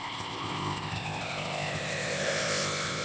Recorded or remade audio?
remade